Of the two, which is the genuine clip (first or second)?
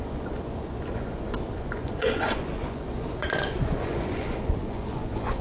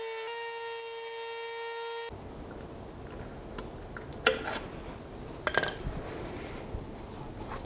second